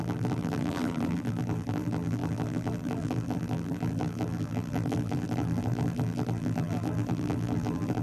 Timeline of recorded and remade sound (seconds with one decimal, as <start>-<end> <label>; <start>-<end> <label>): 0.0-8.0 remade